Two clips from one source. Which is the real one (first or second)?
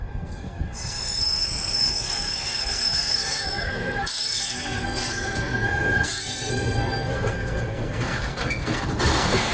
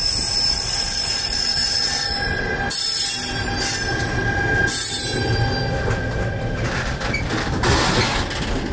second